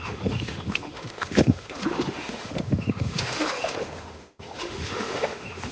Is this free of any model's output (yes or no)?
no